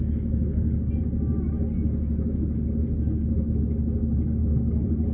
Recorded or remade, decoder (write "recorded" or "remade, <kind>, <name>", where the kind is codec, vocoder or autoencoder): recorded